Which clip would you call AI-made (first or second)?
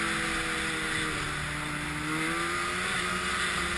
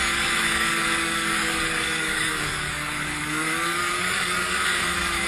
second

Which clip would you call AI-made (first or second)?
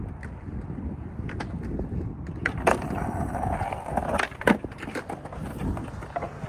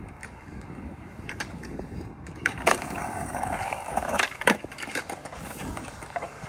second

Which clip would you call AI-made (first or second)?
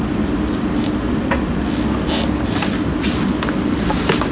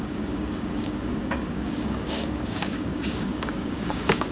second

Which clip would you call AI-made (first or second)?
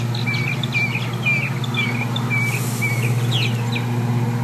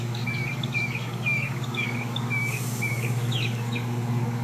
second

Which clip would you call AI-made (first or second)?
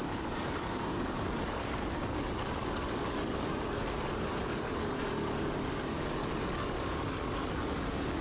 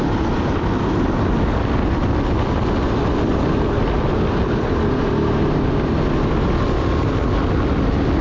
first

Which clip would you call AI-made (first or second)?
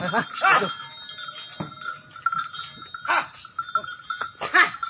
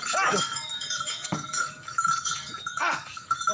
second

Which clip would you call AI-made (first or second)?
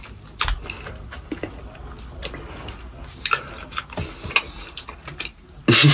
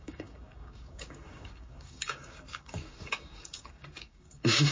second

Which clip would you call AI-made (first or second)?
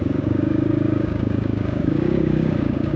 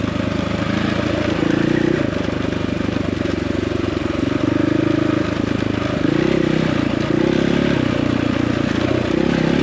first